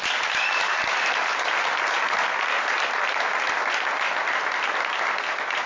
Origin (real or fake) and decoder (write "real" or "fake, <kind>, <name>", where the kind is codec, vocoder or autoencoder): real